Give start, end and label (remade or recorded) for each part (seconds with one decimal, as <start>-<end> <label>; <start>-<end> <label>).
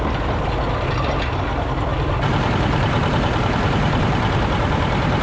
0.0-1.9 recorded; 1.9-5.2 remade